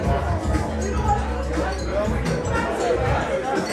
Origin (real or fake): real